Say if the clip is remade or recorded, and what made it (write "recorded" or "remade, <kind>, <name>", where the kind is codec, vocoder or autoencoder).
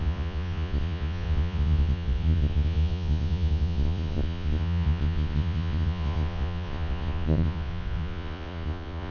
remade, vocoder, Vocos